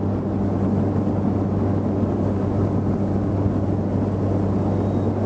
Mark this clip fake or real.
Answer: real